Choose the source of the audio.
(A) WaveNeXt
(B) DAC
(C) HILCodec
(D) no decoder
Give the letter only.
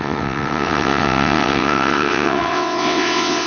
A